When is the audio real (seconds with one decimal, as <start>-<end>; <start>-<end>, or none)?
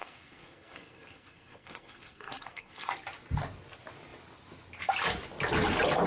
2.9-6.1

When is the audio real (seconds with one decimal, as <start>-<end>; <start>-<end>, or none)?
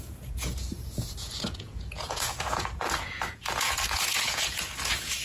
none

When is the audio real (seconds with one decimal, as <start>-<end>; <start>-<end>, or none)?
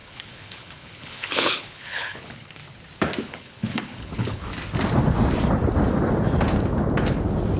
2.6-3.3; 4.5-7.6